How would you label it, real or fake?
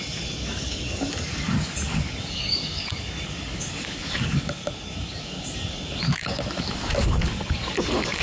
fake